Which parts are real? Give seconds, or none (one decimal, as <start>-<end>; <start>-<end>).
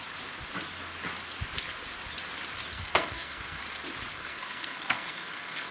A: 0.0-2.7; 3.6-4.1